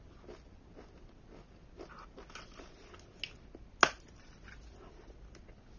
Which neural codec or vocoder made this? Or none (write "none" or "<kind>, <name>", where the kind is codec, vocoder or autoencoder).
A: none